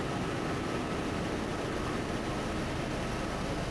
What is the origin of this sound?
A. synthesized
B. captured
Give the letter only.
B